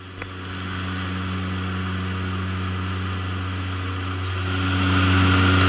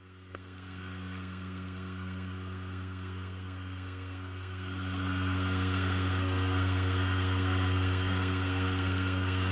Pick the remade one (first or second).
second